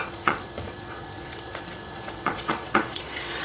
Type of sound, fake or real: fake